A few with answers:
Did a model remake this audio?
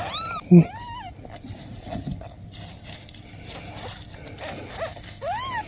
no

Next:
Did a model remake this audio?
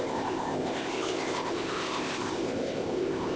yes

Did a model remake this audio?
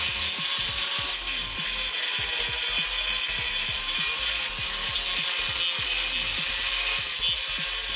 no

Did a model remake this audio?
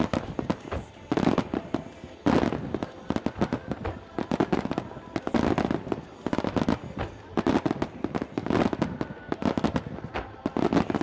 no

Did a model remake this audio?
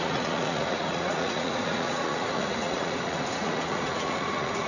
yes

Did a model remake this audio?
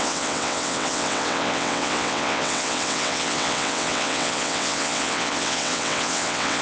yes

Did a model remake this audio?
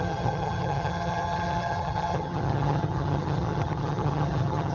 yes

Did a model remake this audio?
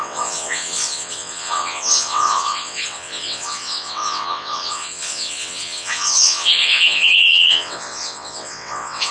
yes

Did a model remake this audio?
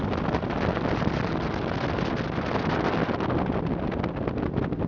no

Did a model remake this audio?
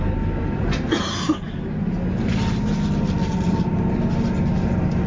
no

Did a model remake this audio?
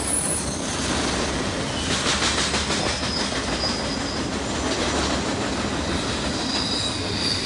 no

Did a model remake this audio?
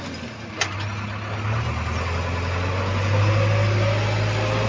no